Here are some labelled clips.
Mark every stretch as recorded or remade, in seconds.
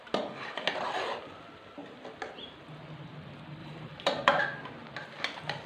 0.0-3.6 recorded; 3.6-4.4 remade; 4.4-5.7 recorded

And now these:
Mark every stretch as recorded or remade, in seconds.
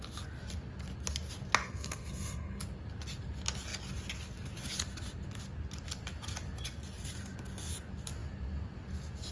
0.0-1.6 recorded; 1.6-2.6 remade; 2.6-9.3 recorded